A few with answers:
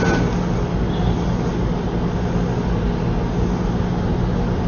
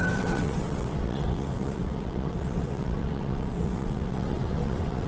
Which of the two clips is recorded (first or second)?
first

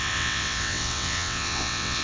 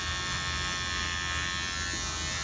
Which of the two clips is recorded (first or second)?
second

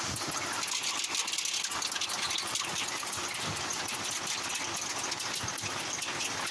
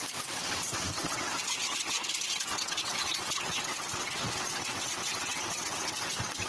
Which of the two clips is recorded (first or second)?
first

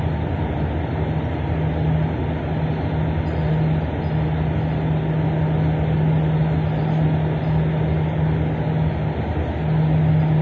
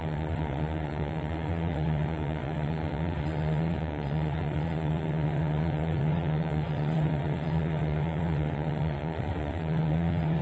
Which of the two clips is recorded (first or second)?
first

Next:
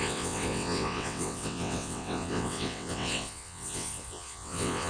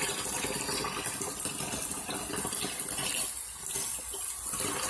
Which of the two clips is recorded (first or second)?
second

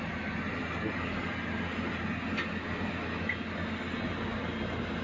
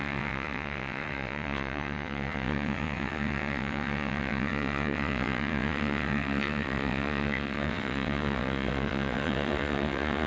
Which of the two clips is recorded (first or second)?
first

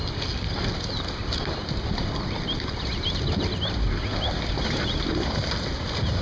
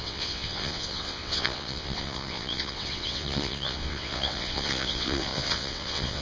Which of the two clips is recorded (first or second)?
first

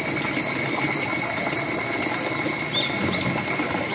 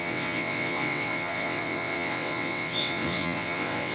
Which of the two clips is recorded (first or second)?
first